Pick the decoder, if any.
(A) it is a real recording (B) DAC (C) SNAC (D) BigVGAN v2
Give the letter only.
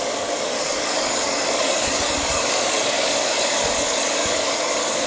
B